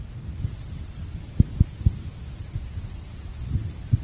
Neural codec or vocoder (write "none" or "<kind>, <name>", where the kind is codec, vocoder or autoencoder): none